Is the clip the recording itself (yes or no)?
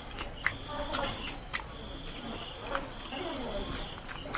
yes